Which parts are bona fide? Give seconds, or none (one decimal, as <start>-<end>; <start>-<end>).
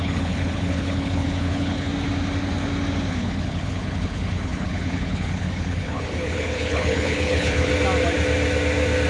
1.9-3.1; 7.7-9.1